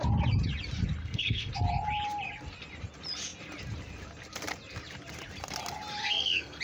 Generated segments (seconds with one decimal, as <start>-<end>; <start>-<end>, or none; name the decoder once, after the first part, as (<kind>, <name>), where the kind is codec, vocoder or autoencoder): 1.0-1.5 (codec, SNAC); 6.0-6.6